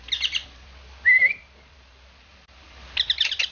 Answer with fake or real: real